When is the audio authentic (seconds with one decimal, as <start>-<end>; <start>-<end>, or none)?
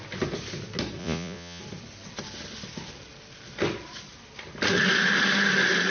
0.0-1.0; 1.6-5.9